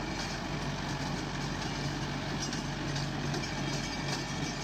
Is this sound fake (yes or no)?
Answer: no